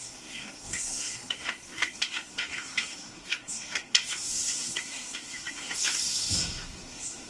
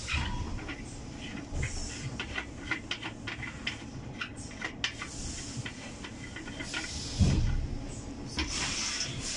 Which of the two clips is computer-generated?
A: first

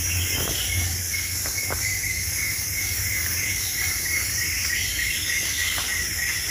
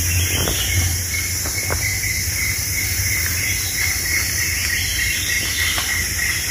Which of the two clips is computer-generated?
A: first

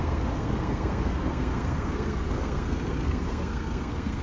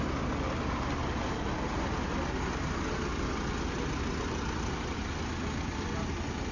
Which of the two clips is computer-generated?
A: first